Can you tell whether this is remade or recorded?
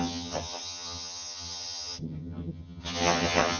remade